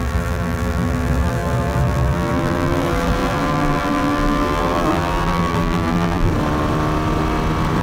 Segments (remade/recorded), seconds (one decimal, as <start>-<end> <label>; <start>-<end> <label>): 0.0-6.3 remade; 6.3-7.8 recorded